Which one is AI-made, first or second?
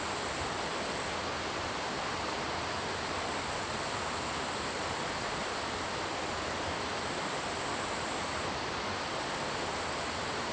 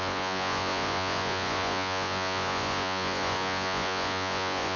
second